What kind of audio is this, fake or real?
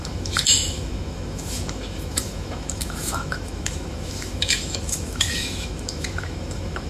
fake